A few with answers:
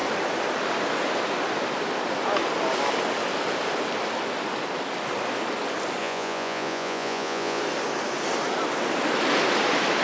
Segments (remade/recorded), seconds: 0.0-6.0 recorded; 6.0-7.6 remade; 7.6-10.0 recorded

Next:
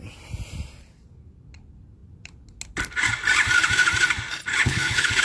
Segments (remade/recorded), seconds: 0.0-4.5 recorded; 4.5-5.2 remade

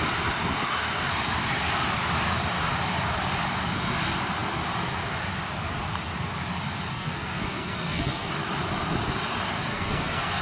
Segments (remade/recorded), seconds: 0.0-6.9 recorded; 6.9-8.3 remade; 8.3-9.7 recorded; 9.7-10.4 remade

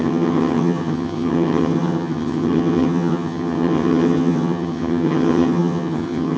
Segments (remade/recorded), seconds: 0.0-6.4 remade

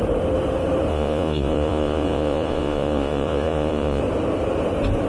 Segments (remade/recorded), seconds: 0.0-0.9 recorded; 0.9-4.0 remade; 4.0-5.1 recorded